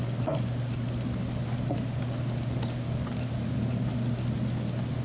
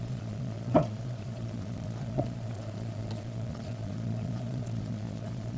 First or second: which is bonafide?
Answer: first